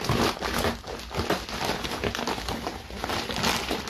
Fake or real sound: real